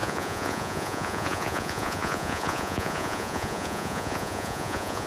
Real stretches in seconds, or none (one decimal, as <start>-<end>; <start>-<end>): none